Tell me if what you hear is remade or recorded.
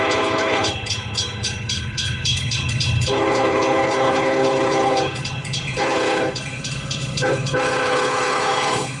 remade